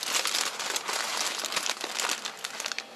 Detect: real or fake real